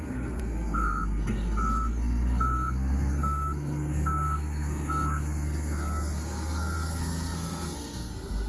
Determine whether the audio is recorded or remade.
remade